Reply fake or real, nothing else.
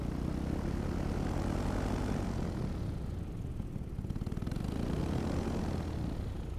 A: real